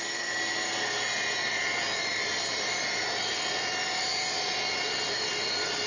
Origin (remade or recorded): recorded